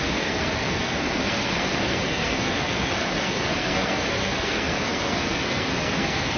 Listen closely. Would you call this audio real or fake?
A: fake